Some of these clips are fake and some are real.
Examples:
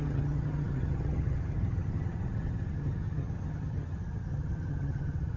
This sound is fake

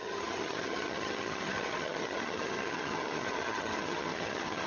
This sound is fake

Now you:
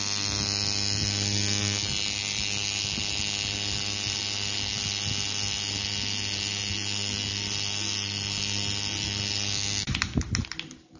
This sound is real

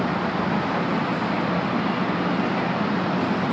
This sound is real